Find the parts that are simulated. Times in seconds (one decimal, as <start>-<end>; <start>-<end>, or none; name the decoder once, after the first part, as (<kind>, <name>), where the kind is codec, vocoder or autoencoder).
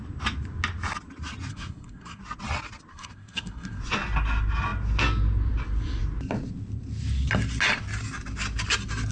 1.5-2.2 (codec, SNAC); 2.9-3.8